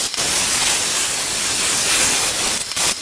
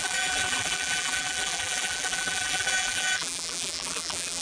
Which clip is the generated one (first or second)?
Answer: second